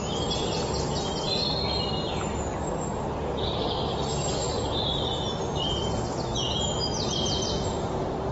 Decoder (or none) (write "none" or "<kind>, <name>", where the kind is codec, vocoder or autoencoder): none